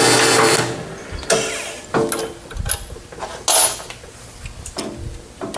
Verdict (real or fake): real